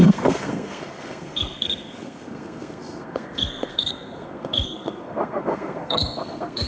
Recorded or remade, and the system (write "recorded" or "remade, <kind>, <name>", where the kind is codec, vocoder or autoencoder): remade, codec, SNAC